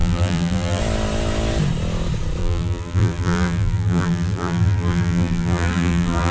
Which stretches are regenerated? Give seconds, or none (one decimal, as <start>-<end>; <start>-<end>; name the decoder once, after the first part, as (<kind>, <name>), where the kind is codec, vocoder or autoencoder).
0.0-0.8 (vocoder, BigVGAN v2); 2.4-6.3